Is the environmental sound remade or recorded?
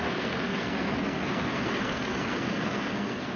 remade